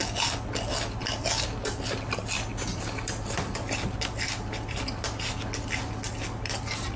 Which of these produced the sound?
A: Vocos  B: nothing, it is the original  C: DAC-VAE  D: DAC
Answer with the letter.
B